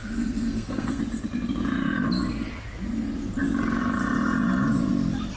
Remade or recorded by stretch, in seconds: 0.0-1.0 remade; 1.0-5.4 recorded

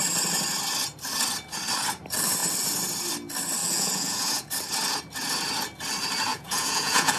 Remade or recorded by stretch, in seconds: 0.0-3.6 recorded; 3.6-4.5 remade; 4.5-6.3 recorded; 6.3-7.2 remade

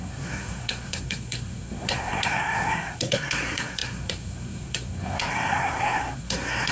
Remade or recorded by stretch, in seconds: 0.0-6.7 remade